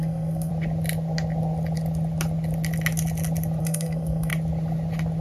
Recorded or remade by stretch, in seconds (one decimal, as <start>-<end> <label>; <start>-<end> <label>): 0.0-0.5 remade; 0.5-3.6 recorded; 3.6-4.3 remade; 4.3-5.2 recorded